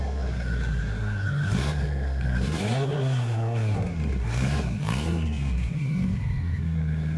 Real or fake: fake